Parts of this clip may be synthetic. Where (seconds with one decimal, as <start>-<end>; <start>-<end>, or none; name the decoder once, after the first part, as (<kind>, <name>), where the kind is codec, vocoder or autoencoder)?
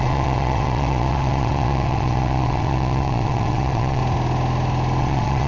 0.0-4.0 (vocoder, WaveNeXt); 5.0-5.5